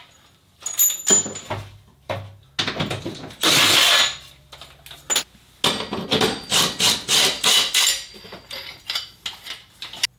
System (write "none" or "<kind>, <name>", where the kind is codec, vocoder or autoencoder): none